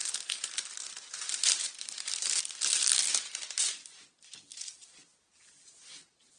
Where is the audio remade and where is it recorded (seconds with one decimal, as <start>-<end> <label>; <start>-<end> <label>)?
0.0-6.4 remade